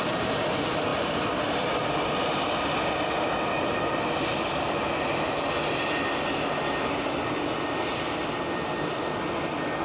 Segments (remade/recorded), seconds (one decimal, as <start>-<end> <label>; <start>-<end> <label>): 0.0-9.8 recorded

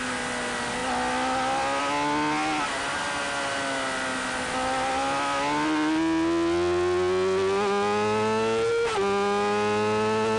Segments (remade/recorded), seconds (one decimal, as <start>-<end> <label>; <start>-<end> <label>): 0.0-10.4 recorded

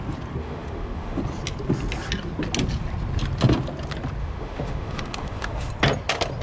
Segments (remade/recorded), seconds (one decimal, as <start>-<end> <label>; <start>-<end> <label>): 0.0-0.4 recorded; 0.4-1.2 remade; 1.2-4.2 recorded; 4.2-5.7 remade; 5.7-6.4 recorded

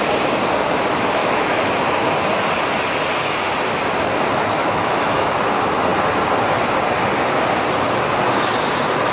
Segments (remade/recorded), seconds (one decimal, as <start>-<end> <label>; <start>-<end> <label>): 0.0-1.2 recorded; 1.2-1.7 remade; 1.7-4.6 recorded; 4.6-5.3 remade; 5.3-9.1 recorded

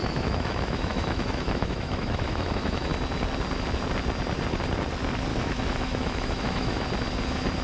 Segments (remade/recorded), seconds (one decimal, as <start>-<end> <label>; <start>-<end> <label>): 0.0-2.9 remade; 2.9-5.3 recorded; 5.3-6.8 remade; 6.8-7.6 recorded

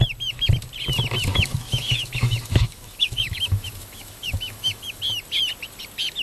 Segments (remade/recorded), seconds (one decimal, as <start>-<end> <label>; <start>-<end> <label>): 0.0-1.3 recorded; 1.3-5.0 remade; 5.0-6.2 recorded